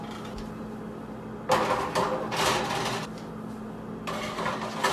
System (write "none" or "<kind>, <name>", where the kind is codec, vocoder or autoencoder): none